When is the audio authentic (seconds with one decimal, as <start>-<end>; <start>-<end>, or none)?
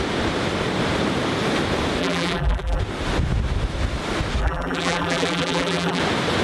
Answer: 0.0-2.0; 2.8-4.4; 6.0-6.4